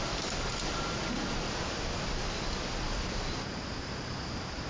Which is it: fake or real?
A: real